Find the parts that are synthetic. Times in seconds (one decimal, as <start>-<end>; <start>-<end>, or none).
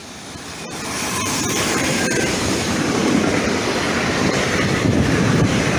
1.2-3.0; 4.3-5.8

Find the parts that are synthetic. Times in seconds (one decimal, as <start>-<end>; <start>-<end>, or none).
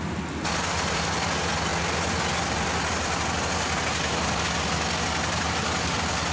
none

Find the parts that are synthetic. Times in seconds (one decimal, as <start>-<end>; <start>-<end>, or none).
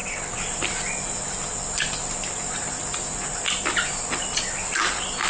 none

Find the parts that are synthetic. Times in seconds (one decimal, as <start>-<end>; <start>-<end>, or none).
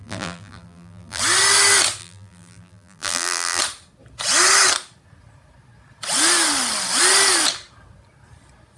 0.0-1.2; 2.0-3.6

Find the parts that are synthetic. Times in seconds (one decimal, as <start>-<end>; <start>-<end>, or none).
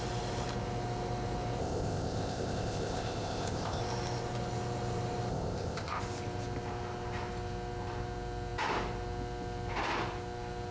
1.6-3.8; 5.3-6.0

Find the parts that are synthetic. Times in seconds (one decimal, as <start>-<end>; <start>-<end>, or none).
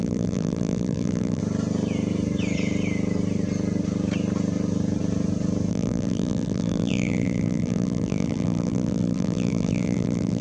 0.0-1.4; 5.7-10.4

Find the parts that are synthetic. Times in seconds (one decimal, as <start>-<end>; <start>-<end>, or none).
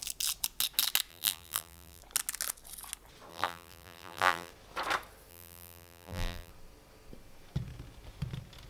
1.1-2.0; 3.3-4.5; 5.3-6.5